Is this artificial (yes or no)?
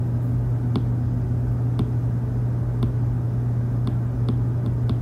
no